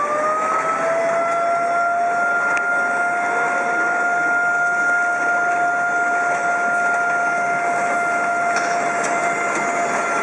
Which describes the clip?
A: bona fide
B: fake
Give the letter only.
A